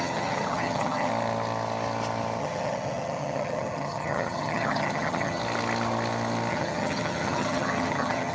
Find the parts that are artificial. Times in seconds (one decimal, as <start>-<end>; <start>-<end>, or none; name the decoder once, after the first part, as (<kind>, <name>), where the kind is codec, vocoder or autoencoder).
0.0-1.1 (vocoder, HiFi-GAN); 2.4-5.4; 6.5-8.3